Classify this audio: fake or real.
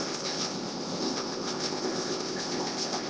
fake